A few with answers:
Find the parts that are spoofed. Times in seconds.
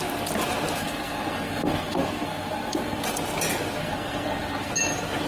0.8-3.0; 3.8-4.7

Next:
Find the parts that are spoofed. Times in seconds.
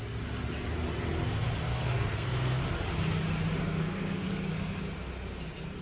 1.7-2.6; 3.6-4.8